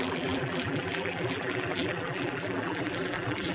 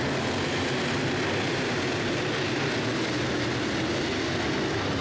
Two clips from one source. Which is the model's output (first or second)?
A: first